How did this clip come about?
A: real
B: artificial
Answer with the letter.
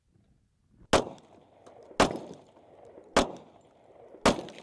A